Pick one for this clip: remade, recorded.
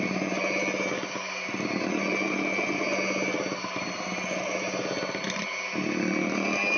recorded